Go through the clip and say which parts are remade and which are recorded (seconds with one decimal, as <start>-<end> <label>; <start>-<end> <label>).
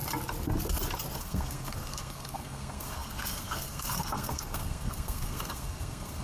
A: 0.0-1.2 recorded; 1.2-6.2 remade